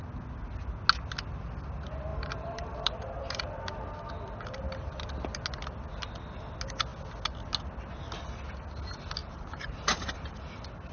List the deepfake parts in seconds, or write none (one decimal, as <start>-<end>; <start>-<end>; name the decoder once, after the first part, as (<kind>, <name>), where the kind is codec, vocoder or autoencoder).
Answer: 2.1-4.1 (vocoder, BigVGAN v2); 9.2-10.4